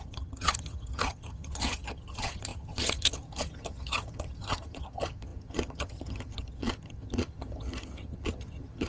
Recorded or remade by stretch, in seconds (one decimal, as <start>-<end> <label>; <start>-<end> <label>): 0.0-8.9 remade